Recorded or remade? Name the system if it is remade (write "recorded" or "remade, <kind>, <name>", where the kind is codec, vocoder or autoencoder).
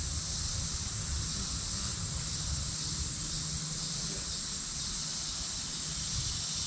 recorded